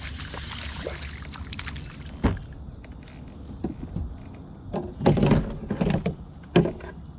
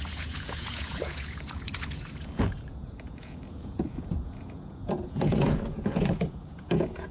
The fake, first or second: second